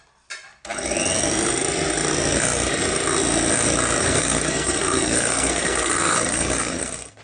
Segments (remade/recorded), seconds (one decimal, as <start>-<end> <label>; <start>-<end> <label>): 0.0-4.0 recorded; 4.0-7.2 remade